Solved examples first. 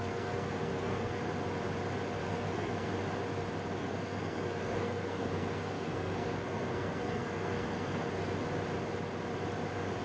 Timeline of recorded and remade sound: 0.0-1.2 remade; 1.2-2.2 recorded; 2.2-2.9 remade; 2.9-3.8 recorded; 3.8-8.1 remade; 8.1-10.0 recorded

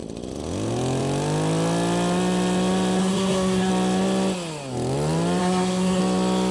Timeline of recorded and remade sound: 0.0-3.0 recorded; 3.0-3.7 remade; 3.7-5.4 recorded; 5.4-6.0 remade; 6.0-6.5 recorded

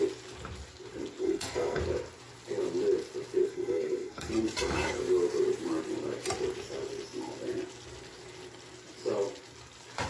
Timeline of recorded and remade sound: 0.0-1.2 recorded; 1.2-1.8 remade; 1.8-3.4 recorded; 3.4-4.3 remade; 4.3-10.1 recorded